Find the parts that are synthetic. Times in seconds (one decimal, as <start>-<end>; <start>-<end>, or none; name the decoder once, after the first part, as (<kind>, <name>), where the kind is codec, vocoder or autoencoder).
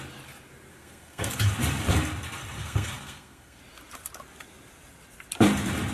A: 0.7-1.3 (codec, SNAC); 2.6-3.6